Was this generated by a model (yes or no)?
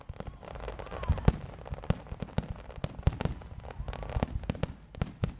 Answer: no